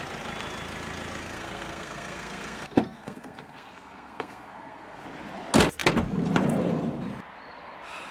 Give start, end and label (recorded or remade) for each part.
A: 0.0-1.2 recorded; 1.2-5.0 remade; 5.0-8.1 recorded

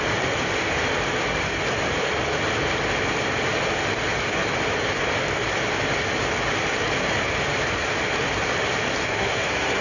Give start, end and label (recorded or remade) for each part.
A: 0.0-9.0 recorded; 9.0-9.8 remade

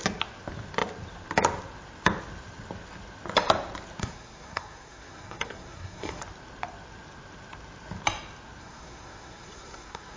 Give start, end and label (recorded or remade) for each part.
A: 0.0-4.0 recorded; 4.0-6.2 remade; 6.2-8.6 recorded; 8.6-10.2 remade

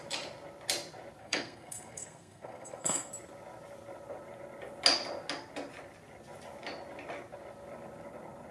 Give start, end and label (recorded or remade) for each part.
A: 0.0-1.2 recorded; 1.2-3.1 remade; 3.1-8.5 recorded

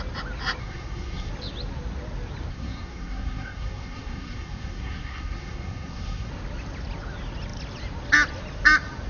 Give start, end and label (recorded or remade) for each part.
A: 0.0-0.6 recorded; 0.6-1.3 remade; 1.3-2.5 recorded; 2.5-6.3 remade; 6.3-9.1 recorded